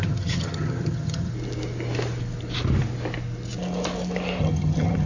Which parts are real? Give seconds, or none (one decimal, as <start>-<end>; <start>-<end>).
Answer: 1.3-4.4

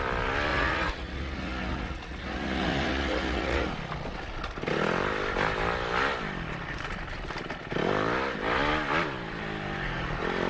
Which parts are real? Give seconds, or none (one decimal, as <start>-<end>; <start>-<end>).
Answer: 0.0-0.5; 3.7-10.5

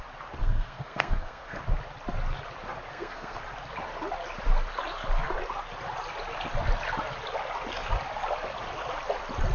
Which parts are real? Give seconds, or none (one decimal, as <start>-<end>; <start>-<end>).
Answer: 0.0-0.4; 1.6-2.9; 3.4-9.5

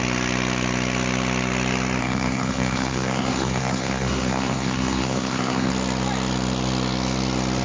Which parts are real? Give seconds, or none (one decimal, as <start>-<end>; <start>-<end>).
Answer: 0.0-2.0; 5.7-7.6